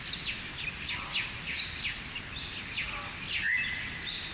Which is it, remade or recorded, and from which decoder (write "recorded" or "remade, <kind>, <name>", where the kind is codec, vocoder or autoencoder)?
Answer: recorded